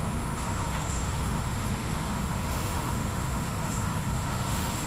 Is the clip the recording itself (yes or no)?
no